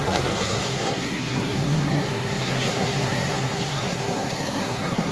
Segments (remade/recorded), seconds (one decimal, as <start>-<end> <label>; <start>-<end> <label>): 0.0-5.1 remade

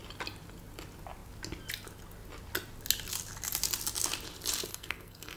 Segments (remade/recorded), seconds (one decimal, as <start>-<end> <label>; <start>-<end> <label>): 0.0-4.7 recorded; 4.7-5.4 remade

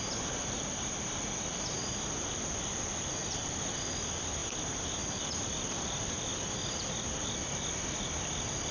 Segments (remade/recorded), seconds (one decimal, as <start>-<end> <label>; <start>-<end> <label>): 0.0-4.4 recorded; 4.4-5.2 remade; 5.2-8.7 recorded

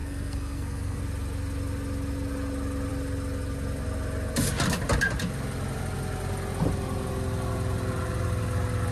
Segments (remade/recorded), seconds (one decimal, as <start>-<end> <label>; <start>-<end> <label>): 0.0-1.0 remade; 1.0-8.9 recorded

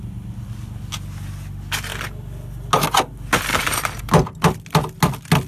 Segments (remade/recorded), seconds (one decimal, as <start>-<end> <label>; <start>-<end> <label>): 0.0-5.5 recorded